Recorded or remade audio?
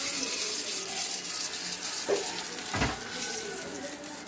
recorded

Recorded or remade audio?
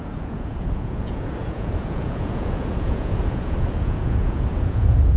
remade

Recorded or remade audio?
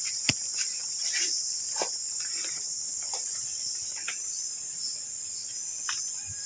recorded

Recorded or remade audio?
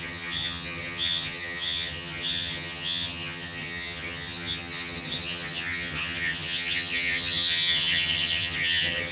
remade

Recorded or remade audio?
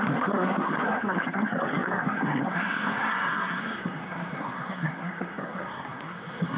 remade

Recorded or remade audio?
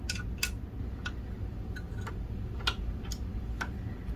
recorded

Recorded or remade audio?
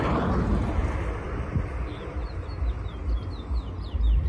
recorded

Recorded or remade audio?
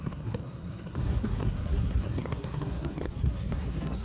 remade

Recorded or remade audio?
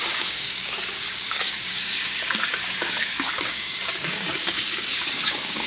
remade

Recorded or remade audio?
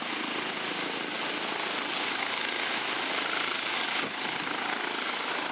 recorded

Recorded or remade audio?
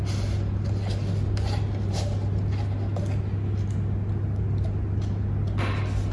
recorded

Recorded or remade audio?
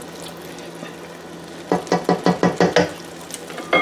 recorded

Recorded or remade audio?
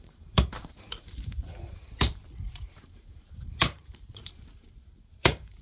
remade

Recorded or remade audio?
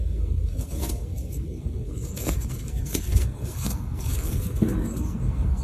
remade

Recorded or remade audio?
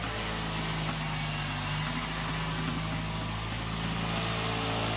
recorded